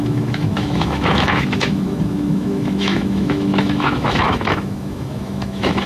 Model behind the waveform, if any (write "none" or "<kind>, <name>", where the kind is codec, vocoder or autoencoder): autoencoder, DAC-VAE